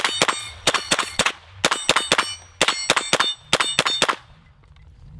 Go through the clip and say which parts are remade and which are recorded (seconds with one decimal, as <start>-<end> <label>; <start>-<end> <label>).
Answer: 0.0-0.4 recorded; 0.4-1.3 remade; 1.3-5.2 recorded